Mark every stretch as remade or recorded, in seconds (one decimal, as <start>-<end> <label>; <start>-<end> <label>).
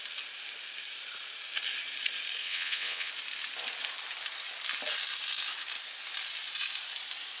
0.0-2.4 recorded; 2.4-3.1 remade; 3.1-7.4 recorded